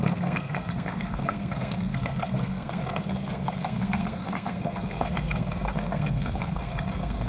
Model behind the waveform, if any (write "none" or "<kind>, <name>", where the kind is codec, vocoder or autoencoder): codec, SNAC